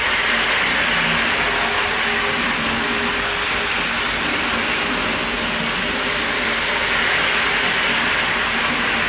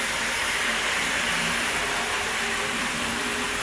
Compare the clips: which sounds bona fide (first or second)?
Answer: first